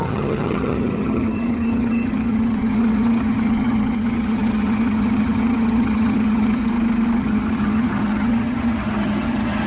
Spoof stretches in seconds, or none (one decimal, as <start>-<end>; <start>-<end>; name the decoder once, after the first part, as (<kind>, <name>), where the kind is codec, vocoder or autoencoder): 0.0-6.6 (vocoder, HiFi-GAN); 7.2-9.7